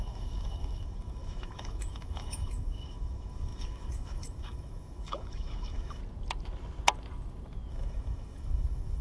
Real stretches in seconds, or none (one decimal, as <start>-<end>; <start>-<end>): 6.0-7.7